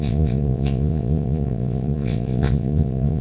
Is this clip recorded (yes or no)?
no